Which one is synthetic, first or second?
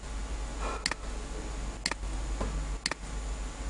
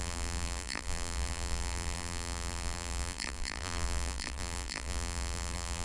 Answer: second